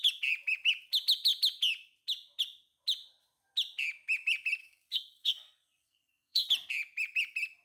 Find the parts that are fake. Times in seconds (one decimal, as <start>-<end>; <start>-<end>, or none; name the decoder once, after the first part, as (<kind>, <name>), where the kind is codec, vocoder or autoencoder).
4.6-6.5 (codec, SNAC)